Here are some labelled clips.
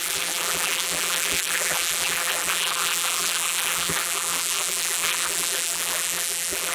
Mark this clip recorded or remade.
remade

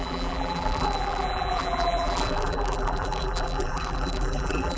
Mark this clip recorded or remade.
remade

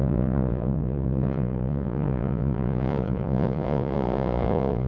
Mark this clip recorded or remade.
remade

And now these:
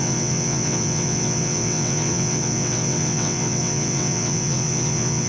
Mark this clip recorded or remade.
remade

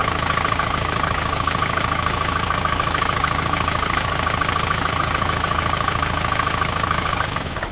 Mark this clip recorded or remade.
remade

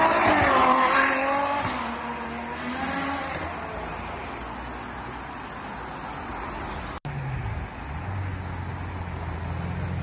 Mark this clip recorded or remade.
recorded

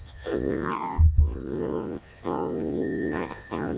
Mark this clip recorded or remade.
remade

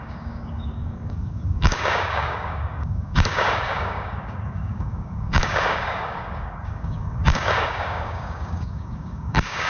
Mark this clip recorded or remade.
remade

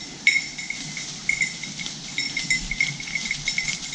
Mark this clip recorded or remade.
recorded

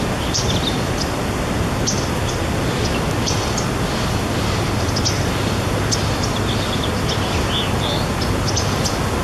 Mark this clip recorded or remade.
recorded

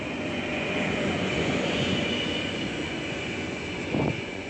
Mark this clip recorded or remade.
remade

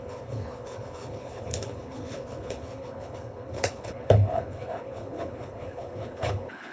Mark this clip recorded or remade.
remade